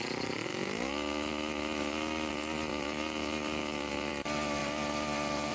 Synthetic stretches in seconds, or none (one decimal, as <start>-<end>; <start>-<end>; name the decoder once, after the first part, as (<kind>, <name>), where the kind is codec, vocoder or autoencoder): 0.5-2.3 (autoencoder, DAC-VAE); 2.7-4.1